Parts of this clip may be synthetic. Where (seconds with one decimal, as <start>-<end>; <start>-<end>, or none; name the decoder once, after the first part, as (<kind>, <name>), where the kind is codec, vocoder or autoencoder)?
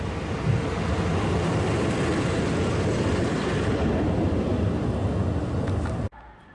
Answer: none